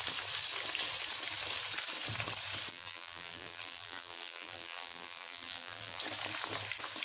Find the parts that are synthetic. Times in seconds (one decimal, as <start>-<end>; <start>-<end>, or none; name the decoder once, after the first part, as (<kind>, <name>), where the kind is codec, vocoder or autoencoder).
2.7-6.0 (vocoder, BigVGAN v2)